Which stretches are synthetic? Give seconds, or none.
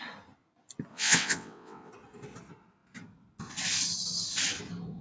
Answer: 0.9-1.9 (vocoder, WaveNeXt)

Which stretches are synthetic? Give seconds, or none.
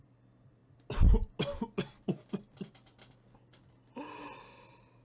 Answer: none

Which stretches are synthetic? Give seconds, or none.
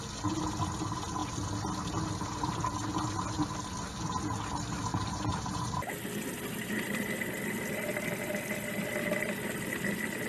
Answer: 4.9-5.9 (vocoder, BigVGAN v2)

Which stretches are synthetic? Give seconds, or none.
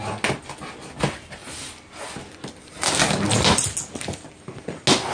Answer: none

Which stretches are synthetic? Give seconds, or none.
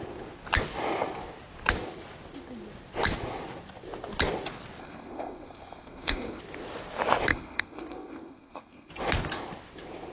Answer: 4.8-6.4 (codec, SNAC); 7.3-8.9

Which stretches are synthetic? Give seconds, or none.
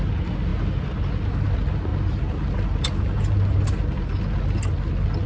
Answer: none